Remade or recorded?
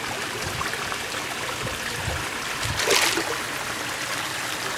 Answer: recorded